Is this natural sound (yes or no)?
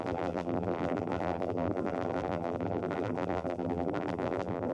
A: no